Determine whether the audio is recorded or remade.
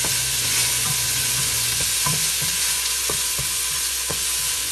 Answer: remade